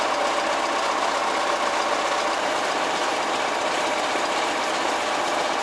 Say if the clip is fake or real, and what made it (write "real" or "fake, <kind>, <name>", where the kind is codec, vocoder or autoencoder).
real